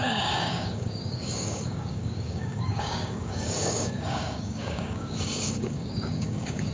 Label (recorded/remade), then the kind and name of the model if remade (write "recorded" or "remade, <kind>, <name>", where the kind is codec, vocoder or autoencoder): remade, codec, DAC